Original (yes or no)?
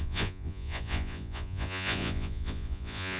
no